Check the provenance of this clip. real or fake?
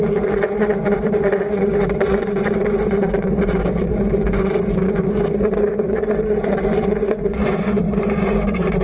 fake